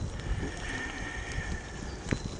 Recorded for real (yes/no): yes